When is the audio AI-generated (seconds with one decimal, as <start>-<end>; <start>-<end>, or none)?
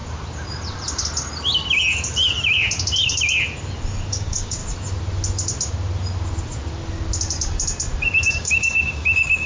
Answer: 4.1-4.6; 8.3-9.5